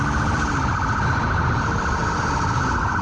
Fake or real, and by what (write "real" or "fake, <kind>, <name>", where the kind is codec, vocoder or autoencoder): real